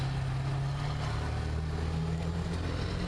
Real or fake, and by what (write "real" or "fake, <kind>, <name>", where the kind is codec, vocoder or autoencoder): real